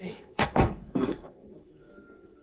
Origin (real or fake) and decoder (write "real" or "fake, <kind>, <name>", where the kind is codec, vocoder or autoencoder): fake, codec, SNAC